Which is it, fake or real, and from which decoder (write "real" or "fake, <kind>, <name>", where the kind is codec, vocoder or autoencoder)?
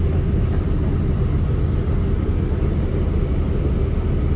real